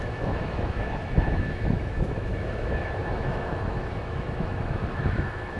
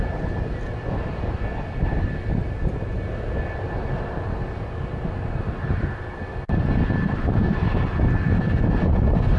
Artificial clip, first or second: first